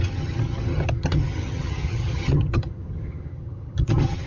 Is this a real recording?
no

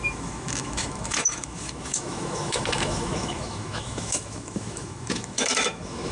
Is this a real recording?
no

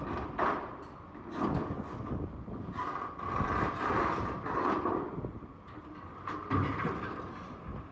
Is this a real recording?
yes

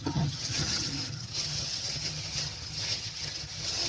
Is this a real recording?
no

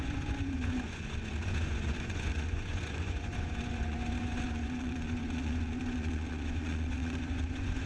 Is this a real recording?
no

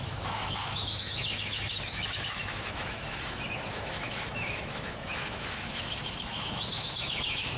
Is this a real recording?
no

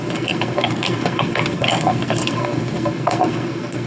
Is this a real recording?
no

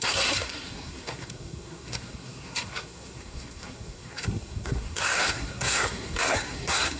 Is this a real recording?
no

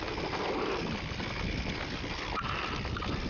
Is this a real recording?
yes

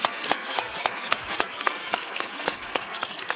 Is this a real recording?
no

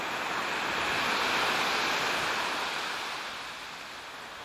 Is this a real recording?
yes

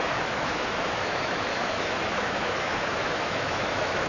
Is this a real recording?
no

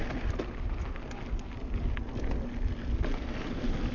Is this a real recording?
yes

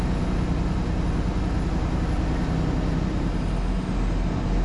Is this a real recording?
yes